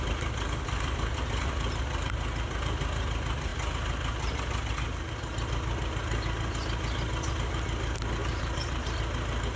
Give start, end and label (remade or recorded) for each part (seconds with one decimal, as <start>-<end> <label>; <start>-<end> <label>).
0.0-8.2 recorded; 8.2-9.0 remade; 9.0-9.6 recorded